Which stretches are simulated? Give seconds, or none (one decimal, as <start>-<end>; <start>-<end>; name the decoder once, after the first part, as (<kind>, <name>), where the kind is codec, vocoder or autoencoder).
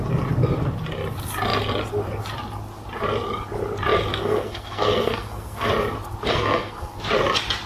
4.1-5.7 (codec, SNAC); 6.3-6.9